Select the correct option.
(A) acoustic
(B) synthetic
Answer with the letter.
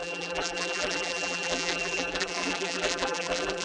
B